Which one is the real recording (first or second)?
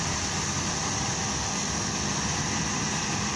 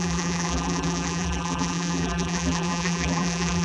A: first